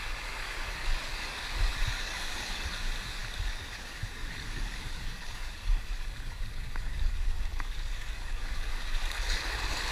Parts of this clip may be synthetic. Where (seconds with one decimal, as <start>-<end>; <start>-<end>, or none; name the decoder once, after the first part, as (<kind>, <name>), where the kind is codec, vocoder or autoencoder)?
0.0-9.9 (codec, DAC)